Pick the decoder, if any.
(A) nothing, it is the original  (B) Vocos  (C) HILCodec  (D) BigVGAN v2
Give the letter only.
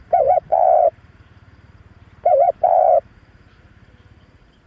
B